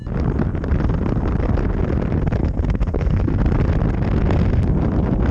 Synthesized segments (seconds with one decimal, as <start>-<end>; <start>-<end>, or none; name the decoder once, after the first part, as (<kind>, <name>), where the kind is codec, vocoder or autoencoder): 2.4-3.4 (codec, SNAC)